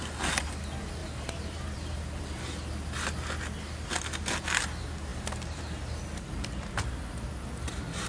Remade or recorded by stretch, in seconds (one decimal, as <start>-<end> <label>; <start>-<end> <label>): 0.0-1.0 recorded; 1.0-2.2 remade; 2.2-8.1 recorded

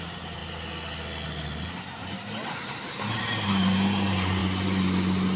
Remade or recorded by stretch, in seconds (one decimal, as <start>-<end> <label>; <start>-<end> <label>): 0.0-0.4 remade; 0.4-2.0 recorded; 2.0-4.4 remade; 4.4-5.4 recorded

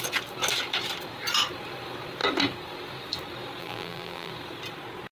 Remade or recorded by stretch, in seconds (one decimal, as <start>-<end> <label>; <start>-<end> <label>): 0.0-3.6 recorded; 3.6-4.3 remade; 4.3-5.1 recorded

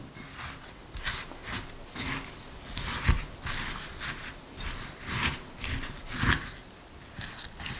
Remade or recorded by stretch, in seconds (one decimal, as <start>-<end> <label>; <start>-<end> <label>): 0.0-7.8 recorded

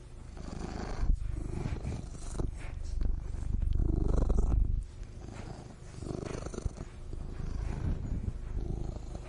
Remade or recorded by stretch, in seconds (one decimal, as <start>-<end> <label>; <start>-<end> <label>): 0.0-3.8 recorded; 3.8-4.5 remade; 4.5-9.3 recorded

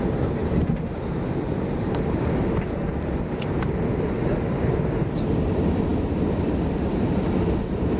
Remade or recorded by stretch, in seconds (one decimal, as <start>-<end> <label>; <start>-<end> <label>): 0.0-5.9 remade; 5.9-6.7 recorded; 6.7-8.0 remade

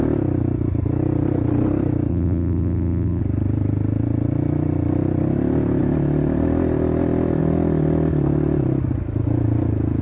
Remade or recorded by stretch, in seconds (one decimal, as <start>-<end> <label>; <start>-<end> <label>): 0.0-2.1 recorded; 2.1-3.2 remade; 3.2-10.0 recorded